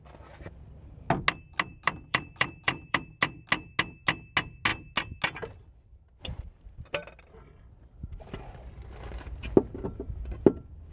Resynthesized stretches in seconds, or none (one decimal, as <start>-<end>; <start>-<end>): 1.7-3.1